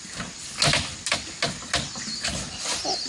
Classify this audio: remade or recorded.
recorded